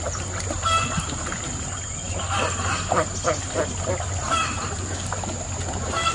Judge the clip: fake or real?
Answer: real